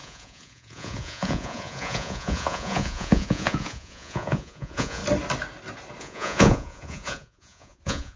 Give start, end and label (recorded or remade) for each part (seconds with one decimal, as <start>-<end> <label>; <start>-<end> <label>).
0.0-5.0 remade; 5.0-6.0 recorded; 6.0-8.2 remade